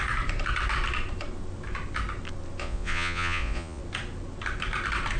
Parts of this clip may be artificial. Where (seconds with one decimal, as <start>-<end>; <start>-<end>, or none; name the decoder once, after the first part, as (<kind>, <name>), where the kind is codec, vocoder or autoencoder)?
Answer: 2.6-3.8 (vocoder, Vocos)